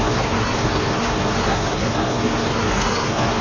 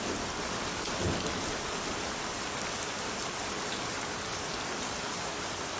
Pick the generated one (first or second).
first